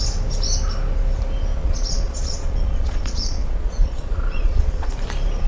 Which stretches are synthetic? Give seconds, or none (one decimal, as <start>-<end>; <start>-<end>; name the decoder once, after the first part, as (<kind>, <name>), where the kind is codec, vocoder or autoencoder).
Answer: 1.6-4.9 (vocoder, Vocos)

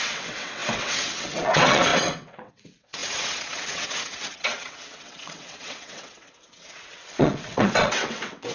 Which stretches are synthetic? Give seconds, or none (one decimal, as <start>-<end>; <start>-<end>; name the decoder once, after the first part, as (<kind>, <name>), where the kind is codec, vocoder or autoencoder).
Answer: 0.0-8.5 (vocoder, WaveNeXt)